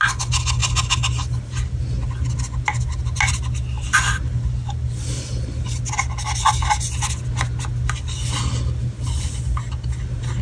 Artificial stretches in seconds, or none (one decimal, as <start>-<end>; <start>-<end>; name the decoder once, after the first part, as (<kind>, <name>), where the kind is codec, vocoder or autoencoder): none

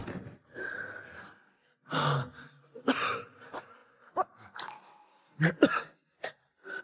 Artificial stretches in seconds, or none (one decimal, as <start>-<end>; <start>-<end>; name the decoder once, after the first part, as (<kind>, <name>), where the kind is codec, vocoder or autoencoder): none

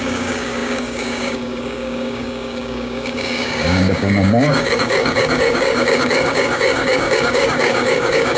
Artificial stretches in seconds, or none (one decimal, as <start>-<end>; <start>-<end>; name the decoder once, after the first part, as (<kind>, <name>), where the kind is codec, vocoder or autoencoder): 0.0-8.4 (codec, DAC)

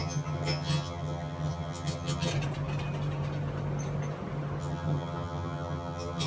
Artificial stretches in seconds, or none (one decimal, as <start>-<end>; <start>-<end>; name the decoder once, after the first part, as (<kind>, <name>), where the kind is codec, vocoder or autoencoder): 0.0-2.3 (vocoder, HiFi-GAN); 4.6-6.3

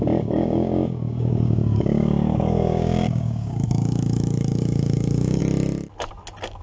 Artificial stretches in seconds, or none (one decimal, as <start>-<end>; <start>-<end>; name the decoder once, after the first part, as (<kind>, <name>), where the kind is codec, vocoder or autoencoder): 0.0-5.4 (codec, DAC)

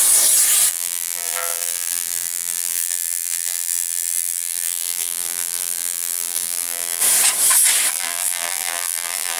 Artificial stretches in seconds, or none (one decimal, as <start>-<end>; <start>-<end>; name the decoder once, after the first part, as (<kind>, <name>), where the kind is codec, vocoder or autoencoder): 0.7-7.0 (vocoder, BigVGAN v2); 7.9-9.4

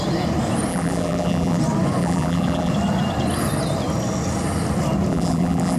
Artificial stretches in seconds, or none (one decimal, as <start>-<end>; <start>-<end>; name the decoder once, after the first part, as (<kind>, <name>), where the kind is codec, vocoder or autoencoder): 0.7-1.6 (vocoder, BigVGAN v2); 2.0-2.7; 5.1-5.8